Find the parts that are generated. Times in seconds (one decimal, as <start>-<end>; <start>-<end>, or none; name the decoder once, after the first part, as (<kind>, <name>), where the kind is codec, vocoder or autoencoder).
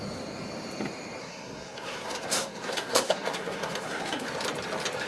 1.2-4.3 (codec, SNAC)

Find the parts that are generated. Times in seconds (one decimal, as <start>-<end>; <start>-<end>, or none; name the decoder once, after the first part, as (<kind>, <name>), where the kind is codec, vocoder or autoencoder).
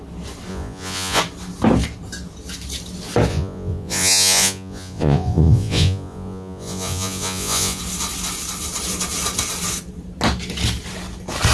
0.5-1.2 (vocoder, Vocos); 3.3-7.8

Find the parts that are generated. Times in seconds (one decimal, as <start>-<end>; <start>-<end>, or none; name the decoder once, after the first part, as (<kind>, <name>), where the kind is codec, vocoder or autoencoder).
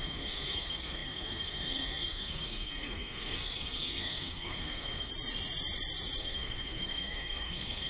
0.0-5.1 (codec, SNAC); 6.2-7.9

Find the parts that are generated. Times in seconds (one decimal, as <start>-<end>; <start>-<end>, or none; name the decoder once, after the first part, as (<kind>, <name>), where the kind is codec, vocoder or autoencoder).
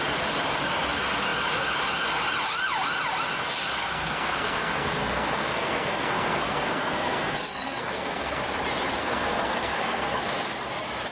3.8-8.4 (codec, SNAC); 9.0-10.2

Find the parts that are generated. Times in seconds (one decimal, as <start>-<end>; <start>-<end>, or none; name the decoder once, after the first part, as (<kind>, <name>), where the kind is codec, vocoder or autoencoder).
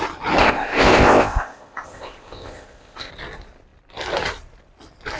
0.4-3.1 (codec, ZipCodec)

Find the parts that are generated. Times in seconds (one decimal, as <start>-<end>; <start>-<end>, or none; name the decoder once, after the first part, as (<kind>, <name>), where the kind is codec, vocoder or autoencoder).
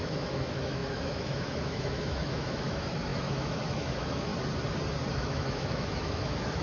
0.0-4.3 (autoencoder, DAC-VAE); 5.1-6.6